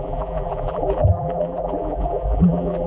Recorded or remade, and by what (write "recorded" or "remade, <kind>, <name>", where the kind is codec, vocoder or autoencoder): remade, vocoder, BigVGAN v2